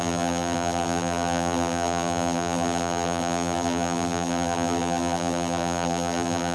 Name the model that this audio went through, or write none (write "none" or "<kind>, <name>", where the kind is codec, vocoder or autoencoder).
vocoder, BigVGAN v2